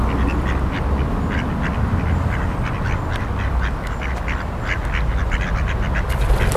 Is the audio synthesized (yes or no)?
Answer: no